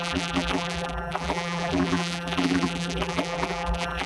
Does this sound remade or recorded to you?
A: remade